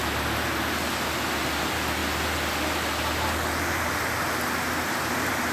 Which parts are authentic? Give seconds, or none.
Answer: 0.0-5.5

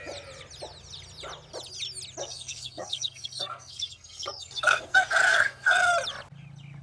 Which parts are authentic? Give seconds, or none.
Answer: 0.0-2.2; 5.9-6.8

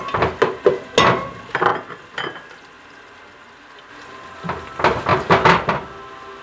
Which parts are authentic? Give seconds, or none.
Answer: 0.0-6.4